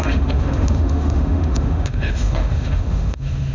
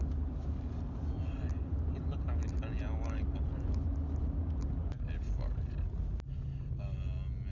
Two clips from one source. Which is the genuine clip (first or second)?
second